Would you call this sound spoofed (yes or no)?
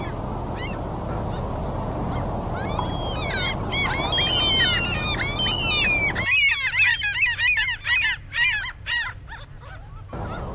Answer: no